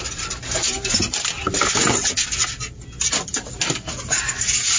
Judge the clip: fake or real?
real